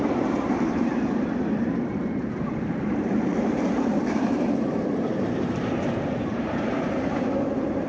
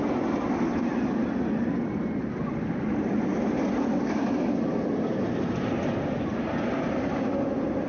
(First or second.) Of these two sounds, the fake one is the first